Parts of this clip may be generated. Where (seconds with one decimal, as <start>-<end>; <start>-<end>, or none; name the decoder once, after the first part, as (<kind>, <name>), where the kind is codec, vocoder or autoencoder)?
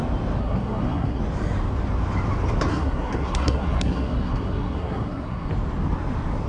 0.4-1.2 (codec, SNAC); 2.7-5.5